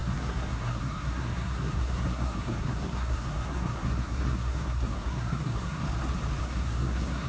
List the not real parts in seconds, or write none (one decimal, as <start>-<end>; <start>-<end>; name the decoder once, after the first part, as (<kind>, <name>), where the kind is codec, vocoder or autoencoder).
0.0-5.8 (codec, SNAC); 6.4-7.3